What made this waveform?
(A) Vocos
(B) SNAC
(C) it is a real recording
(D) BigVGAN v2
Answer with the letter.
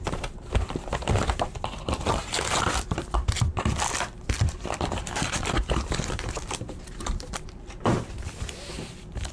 D